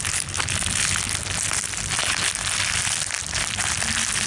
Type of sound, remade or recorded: recorded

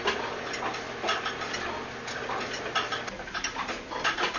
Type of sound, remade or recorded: recorded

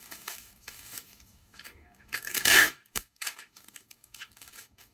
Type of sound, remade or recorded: remade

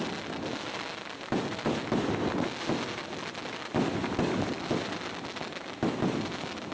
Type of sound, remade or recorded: recorded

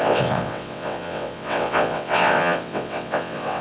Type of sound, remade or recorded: remade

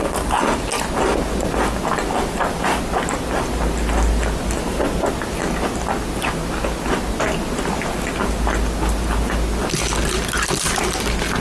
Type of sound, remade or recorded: recorded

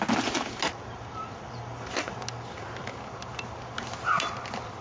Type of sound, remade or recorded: recorded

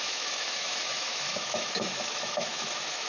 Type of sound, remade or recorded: remade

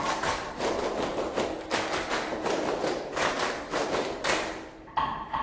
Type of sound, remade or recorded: recorded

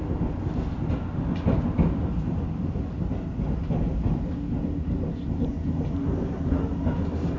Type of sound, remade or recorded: recorded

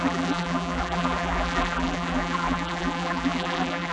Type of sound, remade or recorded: remade